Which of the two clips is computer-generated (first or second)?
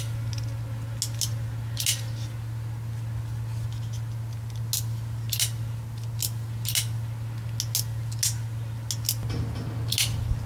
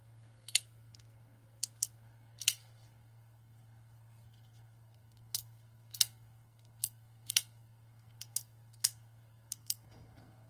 second